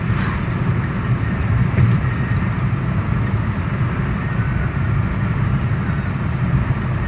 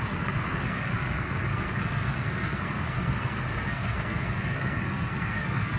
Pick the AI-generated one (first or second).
second